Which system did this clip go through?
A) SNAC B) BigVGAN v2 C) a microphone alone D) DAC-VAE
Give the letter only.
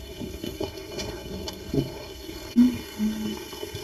A